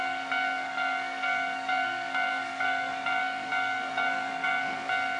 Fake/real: fake